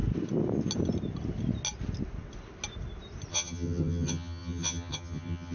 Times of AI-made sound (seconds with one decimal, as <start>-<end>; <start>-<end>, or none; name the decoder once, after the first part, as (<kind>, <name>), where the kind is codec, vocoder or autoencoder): 3.3-5.5 (vocoder, HiFi-GAN)